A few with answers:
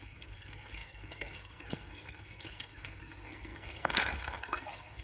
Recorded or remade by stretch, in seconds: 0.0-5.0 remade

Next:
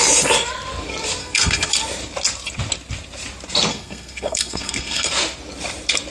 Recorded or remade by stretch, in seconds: 0.0-1.2 recorded; 1.2-1.7 remade; 1.7-3.7 recorded; 3.7-5.1 remade; 5.1-6.1 recorded

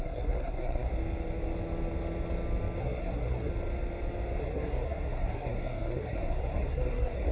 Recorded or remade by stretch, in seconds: 0.0-0.9 remade; 0.9-2.8 recorded; 2.8-3.5 remade; 3.5-4.4 recorded; 4.4-7.3 remade

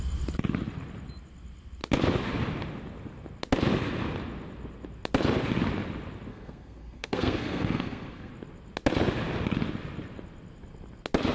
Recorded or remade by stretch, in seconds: 0.0-6.3 recorded; 6.3-8.3 remade; 8.3-11.3 recorded

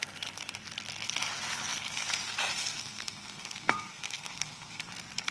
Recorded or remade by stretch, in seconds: 0.0-2.8 recorded; 2.8-4.8 remade; 4.8-5.3 recorded

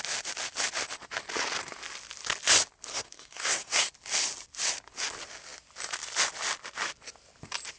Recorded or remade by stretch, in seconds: 0.0-2.9 recorded; 2.9-3.9 remade; 3.9-7.8 recorded

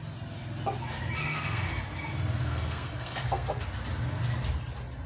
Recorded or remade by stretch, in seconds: 0.0-1.2 recorded; 1.2-1.7 remade; 1.7-2.4 recorded; 2.4-3.6 remade; 3.6-5.1 recorded

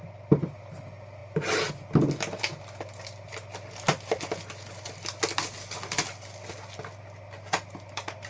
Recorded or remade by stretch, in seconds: 0.0-8.3 recorded